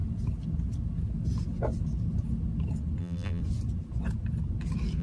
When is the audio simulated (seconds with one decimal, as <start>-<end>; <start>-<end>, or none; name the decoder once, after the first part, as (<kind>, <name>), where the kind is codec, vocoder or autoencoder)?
3.0-3.4 (vocoder, BigVGAN v2)